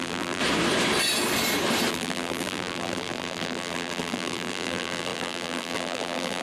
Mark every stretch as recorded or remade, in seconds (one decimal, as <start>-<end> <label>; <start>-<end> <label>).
0.0-0.4 remade; 0.4-1.9 recorded; 1.9-6.4 remade